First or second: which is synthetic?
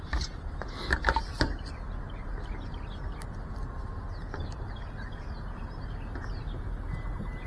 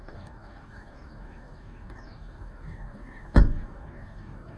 second